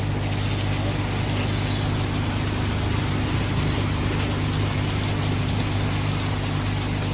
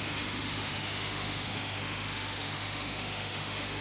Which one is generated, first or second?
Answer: second